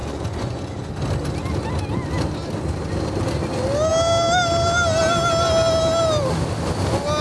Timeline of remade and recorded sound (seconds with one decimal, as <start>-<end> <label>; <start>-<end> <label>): 0.0-0.9 remade; 0.9-7.2 recorded